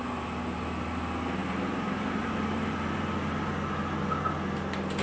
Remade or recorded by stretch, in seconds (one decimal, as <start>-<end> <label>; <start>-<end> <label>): 0.0-1.4 recorded; 1.4-3.5 remade; 3.5-5.0 recorded